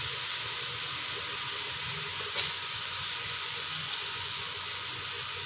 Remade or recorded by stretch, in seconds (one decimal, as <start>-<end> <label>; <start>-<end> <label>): 0.0-2.1 recorded; 2.1-5.5 remade